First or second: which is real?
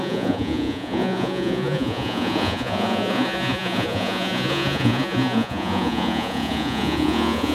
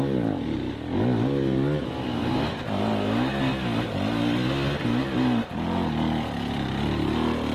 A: second